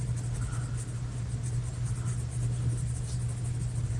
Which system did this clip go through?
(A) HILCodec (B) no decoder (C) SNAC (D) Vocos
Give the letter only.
B